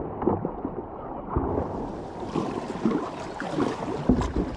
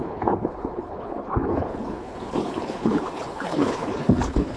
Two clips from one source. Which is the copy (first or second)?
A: second